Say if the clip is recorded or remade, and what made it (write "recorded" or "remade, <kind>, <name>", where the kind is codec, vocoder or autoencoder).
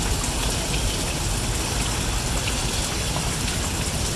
recorded